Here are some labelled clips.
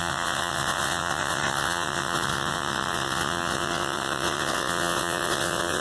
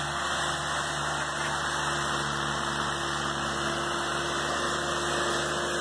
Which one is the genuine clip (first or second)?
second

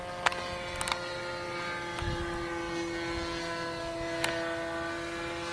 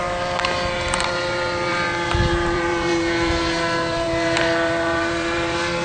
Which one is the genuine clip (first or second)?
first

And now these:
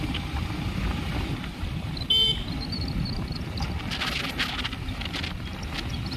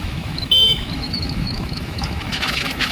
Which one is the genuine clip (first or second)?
first